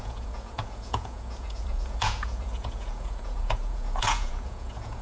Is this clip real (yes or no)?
no